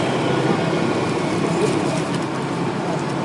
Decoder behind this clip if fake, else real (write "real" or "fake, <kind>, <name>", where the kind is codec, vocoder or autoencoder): real